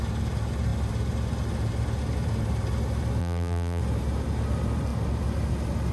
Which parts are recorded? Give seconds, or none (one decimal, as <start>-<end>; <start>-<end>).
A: 0.0-3.2; 3.8-5.9

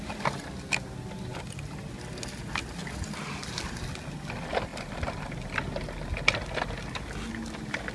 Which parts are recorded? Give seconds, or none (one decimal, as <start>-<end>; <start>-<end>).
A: 0.0-7.9

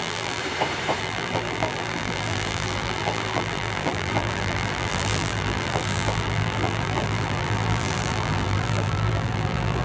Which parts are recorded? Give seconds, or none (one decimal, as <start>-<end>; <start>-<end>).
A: 0.4-1.0

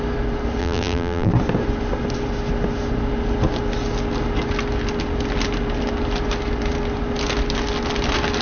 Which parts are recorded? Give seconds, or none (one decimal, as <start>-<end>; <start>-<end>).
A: 0.0-0.6; 1.3-8.4

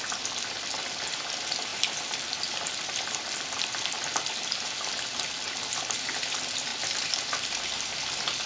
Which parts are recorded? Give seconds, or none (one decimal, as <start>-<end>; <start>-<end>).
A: 0.0-1.7; 5.2-6.7; 7.5-8.5

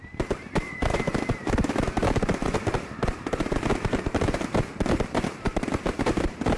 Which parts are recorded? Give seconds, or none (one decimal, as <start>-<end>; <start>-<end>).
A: none

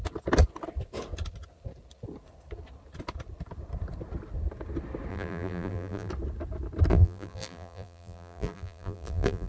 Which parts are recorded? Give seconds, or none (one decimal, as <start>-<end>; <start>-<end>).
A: 0.0-5.1; 6.1-6.9